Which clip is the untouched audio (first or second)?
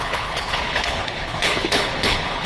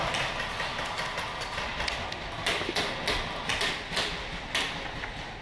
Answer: second